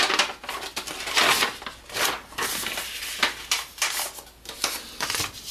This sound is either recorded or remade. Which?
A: recorded